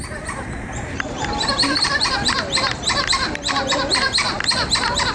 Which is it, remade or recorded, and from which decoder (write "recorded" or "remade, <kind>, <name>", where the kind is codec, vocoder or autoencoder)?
remade, vocoder, BigVGAN v2